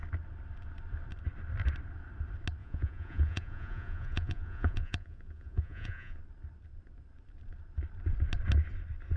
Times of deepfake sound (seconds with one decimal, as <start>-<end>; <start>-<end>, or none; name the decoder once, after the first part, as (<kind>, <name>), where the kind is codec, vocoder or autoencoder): 2.6-6.2 (vocoder, Vocos)